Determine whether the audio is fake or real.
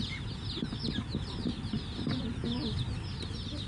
real